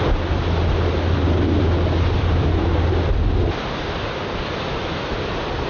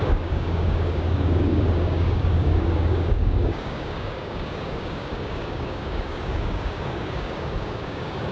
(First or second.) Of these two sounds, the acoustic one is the first